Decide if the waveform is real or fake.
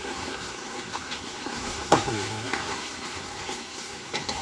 fake